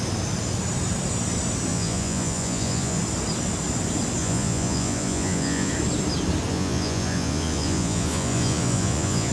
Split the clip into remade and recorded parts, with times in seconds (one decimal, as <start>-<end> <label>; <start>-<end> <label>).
0.0-1.7 recorded; 1.7-3.0 remade; 3.0-4.2 recorded; 4.2-5.7 remade; 5.7-6.5 recorded; 6.5-9.3 remade